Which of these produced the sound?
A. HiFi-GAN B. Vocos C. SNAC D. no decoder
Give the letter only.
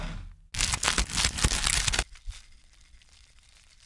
D